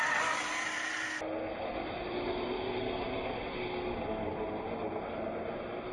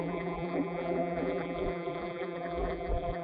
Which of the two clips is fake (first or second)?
second